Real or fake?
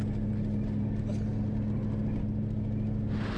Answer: real